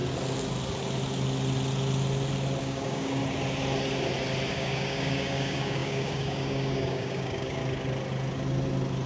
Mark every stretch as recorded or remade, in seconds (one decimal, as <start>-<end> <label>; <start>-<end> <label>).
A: 0.0-2.6 recorded; 2.6-3.2 remade; 3.2-4.5 recorded; 4.5-7.6 remade; 7.6-9.1 recorded